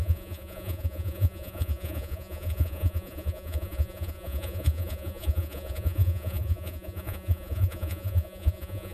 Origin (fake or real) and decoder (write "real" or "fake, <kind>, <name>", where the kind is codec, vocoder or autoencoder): fake, vocoder, Vocos